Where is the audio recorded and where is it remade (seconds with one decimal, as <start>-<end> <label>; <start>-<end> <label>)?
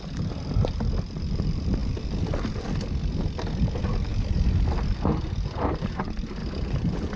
0.0-7.2 recorded